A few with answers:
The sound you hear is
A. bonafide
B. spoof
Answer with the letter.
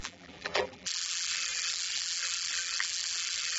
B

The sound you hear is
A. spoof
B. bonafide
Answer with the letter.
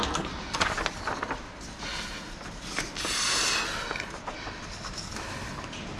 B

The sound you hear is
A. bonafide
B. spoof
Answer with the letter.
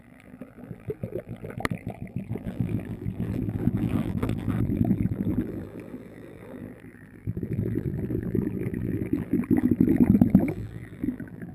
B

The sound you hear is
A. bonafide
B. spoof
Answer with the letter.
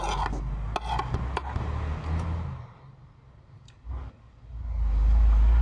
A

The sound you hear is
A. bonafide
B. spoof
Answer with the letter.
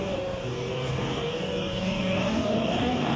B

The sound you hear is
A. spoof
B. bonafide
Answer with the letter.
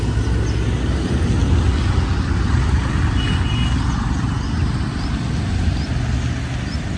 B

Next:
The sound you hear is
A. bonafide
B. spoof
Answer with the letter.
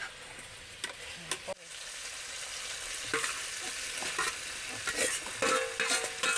A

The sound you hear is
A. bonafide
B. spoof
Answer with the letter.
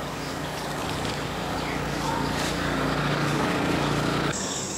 B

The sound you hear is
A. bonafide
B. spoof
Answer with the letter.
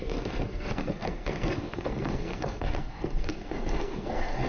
B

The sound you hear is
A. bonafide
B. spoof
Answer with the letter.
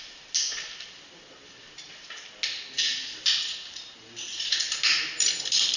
A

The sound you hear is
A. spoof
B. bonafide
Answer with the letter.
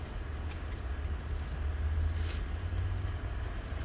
B